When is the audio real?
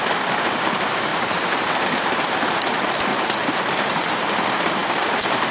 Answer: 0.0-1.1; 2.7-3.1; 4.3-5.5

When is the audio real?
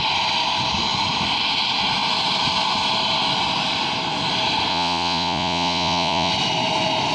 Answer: 0.0-4.7; 6.3-7.1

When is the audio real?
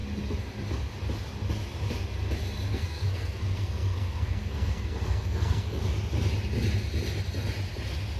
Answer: 0.0-2.7; 5.8-8.2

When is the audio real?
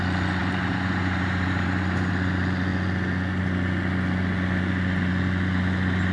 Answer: 0.0-0.4; 2.1-6.1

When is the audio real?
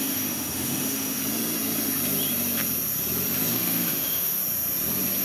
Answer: 1.2-3.5; 4.4-5.2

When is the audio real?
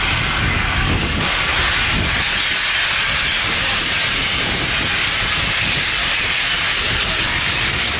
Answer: 1.5-5.6; 6.0-6.9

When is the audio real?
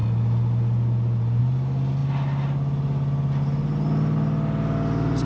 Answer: 0.0-5.2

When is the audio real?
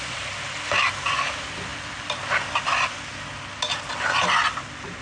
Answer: 0.0-5.0